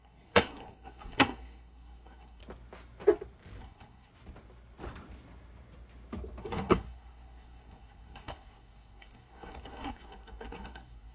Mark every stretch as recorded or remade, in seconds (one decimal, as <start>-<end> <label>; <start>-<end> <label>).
0.0-2.4 remade; 2.4-3.6 recorded; 3.6-4.1 remade; 4.1-6.4 recorded; 6.4-11.1 remade